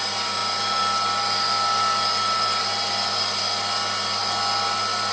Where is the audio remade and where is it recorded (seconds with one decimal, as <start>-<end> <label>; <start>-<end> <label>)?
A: 0.0-5.1 recorded